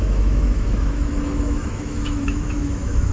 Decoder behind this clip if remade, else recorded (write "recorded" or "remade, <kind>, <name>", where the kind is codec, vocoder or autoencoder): remade, autoencoder, DAC-VAE